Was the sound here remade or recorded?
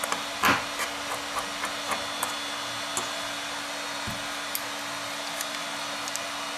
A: recorded